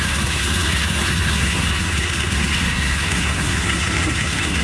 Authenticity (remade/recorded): remade